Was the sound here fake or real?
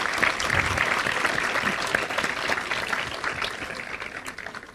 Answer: real